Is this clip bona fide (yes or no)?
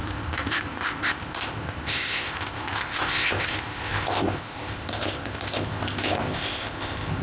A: no